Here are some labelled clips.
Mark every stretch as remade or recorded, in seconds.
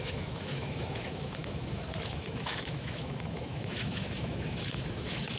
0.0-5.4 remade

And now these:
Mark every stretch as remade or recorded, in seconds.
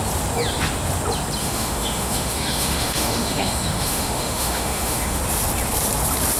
0.0-1.4 recorded; 1.4-5.2 remade; 5.2-6.4 recorded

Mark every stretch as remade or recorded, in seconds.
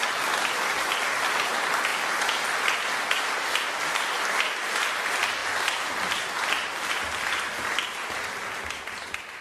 0.0-9.4 recorded